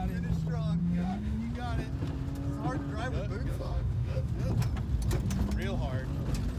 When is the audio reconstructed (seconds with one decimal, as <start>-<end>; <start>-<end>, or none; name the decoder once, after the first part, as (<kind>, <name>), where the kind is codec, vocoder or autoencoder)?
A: 0.8-1.4 (autoencoder, DAC-VAE); 3.5-4.3